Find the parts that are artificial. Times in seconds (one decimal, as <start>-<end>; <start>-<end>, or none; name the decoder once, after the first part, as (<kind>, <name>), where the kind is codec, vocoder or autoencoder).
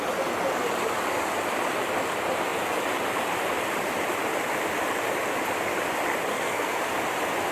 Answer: 6.3-6.8 (codec, SNAC)